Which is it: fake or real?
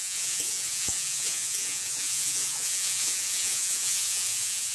fake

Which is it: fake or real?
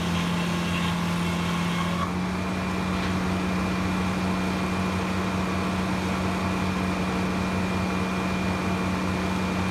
real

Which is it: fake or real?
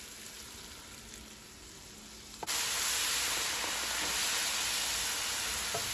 real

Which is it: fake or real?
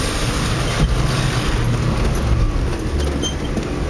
real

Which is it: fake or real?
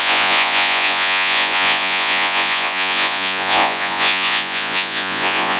fake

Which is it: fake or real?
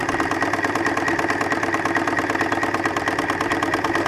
real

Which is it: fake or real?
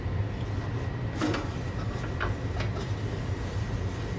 real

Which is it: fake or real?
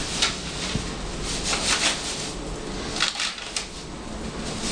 real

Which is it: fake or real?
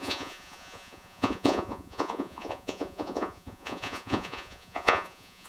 fake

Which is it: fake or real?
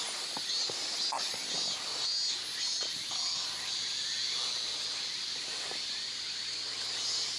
real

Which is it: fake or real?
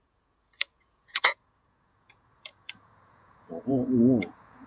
fake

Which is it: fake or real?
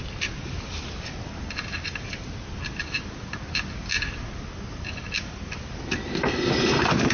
real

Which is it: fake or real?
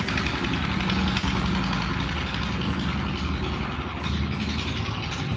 real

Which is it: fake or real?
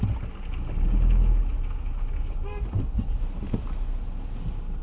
real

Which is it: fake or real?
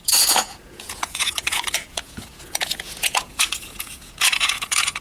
fake